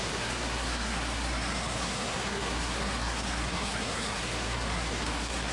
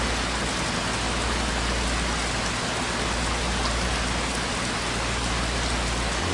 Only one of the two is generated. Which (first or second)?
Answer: first